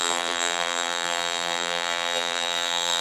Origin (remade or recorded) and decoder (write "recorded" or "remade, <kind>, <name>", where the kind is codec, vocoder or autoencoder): remade, vocoder, BigVGAN v2